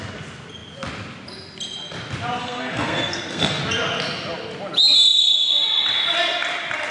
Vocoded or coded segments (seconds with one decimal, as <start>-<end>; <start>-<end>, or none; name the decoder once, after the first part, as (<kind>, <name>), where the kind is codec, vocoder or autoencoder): 2.4-3.6 (codec, SNAC)

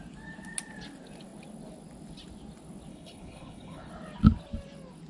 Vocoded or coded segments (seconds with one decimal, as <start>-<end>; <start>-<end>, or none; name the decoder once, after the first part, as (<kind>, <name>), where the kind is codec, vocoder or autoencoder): 2.9-3.9 (codec, HILCodec)

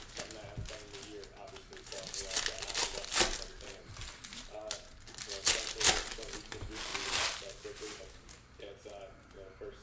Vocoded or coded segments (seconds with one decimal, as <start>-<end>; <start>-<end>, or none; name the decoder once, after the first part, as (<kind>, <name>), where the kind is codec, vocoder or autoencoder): none

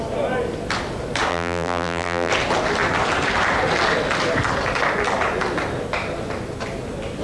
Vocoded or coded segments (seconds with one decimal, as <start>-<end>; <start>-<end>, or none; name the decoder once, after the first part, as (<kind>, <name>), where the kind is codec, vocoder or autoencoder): 1.3-2.3 (vocoder, BigVGAN v2)

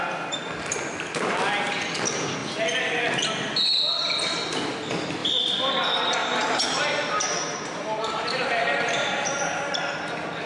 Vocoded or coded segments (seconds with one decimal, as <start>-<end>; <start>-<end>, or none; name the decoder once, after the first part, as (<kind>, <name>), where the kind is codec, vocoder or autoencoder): 5.2-5.7 (vocoder, BigVGAN v2); 6.2-9.6